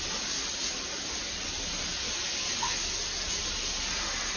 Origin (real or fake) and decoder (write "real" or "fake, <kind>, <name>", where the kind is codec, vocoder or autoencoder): real